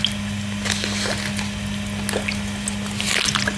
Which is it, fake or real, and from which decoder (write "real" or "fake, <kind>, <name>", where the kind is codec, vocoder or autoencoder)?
real